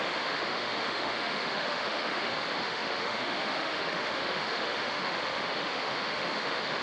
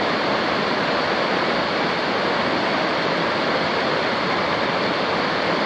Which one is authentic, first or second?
second